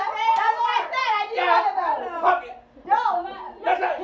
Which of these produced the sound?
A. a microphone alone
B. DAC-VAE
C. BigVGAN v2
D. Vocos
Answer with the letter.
A